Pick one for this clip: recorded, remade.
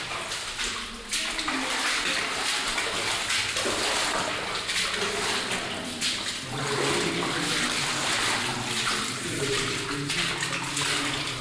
recorded